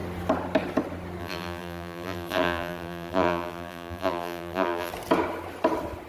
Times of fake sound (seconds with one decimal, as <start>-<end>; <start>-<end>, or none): 1.2-4.9